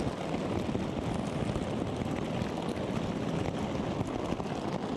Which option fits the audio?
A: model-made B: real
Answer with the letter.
B